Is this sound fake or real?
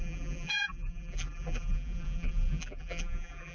fake